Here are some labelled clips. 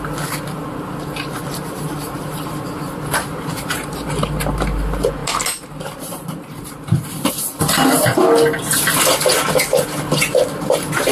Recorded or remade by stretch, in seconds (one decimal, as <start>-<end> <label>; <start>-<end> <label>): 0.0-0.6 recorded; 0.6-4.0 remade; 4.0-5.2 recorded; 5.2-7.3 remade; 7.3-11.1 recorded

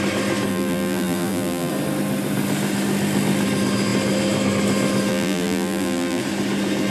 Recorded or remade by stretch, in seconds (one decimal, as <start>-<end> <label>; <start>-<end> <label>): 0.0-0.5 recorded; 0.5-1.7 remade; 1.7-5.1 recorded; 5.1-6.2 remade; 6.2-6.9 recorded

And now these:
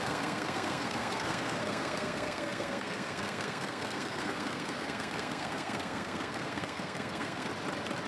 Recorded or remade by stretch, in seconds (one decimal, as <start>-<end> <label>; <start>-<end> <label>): 0.0-7.5 remade; 7.5-8.1 recorded

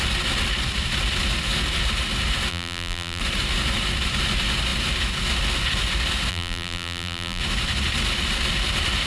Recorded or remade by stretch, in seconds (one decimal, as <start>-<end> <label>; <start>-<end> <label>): 0.0-2.5 recorded; 2.5-3.2 remade; 3.2-6.3 recorded; 6.3-7.4 remade; 7.4-9.1 recorded